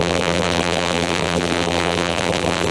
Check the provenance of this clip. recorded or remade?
remade